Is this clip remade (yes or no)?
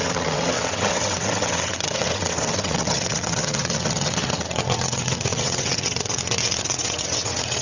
yes